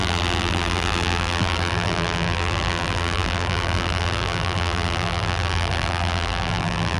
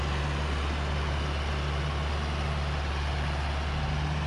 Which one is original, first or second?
second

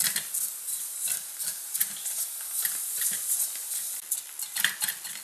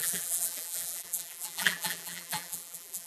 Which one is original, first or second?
first